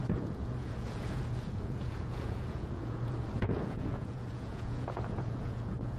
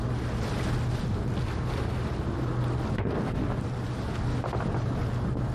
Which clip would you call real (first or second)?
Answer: second